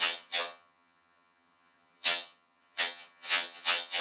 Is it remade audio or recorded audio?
remade